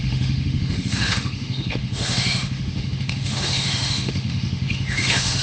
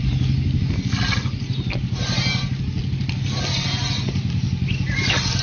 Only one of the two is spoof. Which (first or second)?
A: first